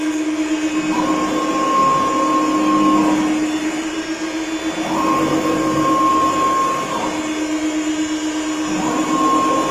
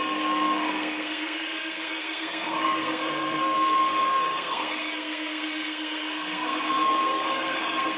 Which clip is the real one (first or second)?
first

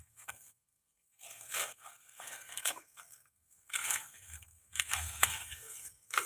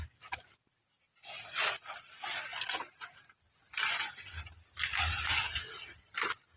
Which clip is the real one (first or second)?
second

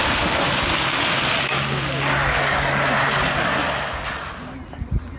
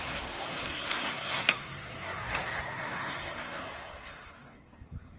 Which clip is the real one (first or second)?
first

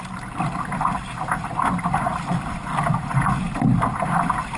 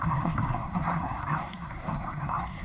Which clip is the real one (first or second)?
first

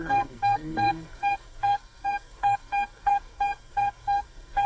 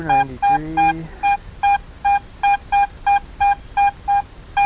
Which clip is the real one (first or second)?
second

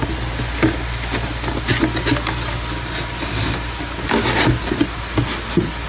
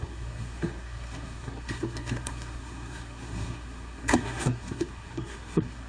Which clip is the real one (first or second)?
first